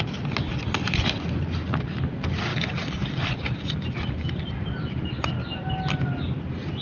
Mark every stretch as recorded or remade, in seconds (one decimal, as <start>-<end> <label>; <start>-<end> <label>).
0.0-6.8 recorded